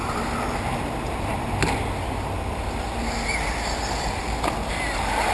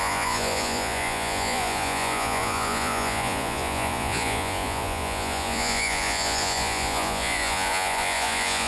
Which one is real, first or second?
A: first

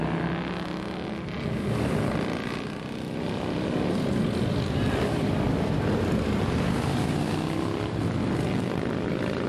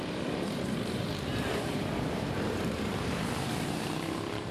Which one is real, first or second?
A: first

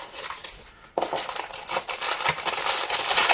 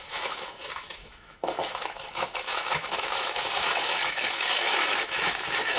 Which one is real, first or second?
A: first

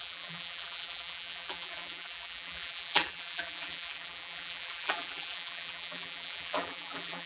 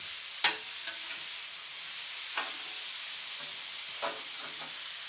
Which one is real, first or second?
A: second